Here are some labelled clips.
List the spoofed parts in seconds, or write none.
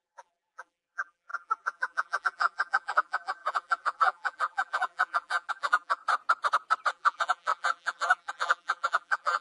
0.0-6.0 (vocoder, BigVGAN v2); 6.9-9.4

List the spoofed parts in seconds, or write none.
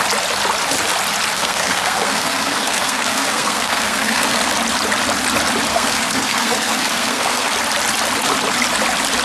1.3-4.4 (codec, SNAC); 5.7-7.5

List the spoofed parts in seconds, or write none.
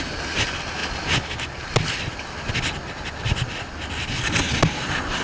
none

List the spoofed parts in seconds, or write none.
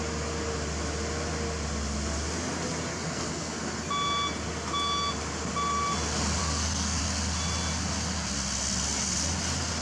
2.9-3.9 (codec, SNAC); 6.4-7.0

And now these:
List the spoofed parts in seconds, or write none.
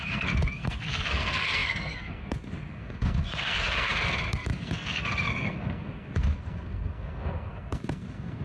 0.0-8.4 (codec, SNAC)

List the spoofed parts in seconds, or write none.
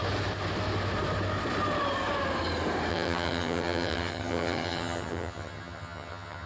2.9-6.5 (vocoder, HiFi-GAN)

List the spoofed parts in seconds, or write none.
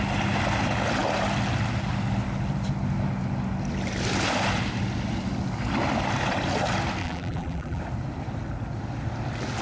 7.0-7.8 (vocoder, BigVGAN v2)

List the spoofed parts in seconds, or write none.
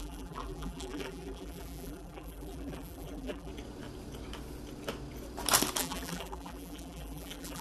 0.0-3.5 (vocoder, BigVGAN v2); 5.8-7.6